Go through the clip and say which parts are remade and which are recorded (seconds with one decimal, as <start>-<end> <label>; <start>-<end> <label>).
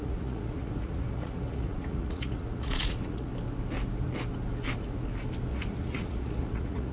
0.0-3.3 remade; 3.3-5.5 recorded; 5.5-6.9 remade